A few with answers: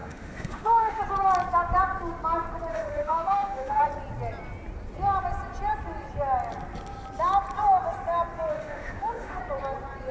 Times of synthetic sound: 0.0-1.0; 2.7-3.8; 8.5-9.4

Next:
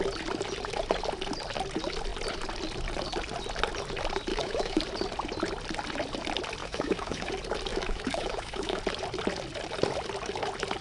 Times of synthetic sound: 4.3-4.8; 6.6-7.3; 7.7-8.8

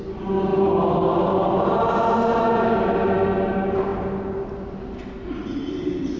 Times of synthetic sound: none

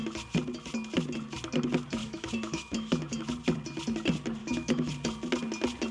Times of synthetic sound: 2.0-3.2; 4.4-4.9

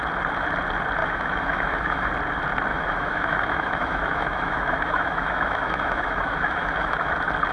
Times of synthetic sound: 1.0-2.1; 2.7-7.1

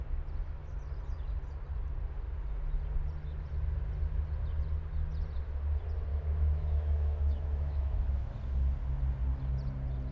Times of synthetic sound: 6.1-8.3

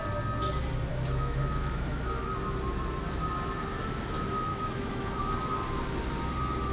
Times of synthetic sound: 0.9-2.3; 4.5-5.2

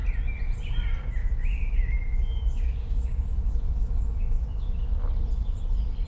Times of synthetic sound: 1.2-4.9